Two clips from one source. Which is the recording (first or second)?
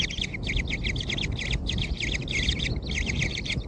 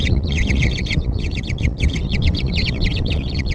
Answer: first